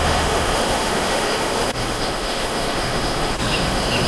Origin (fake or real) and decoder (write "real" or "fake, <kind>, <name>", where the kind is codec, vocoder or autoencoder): fake, autoencoder, DAC-VAE